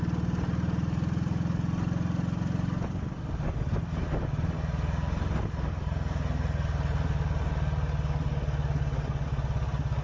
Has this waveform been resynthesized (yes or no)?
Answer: no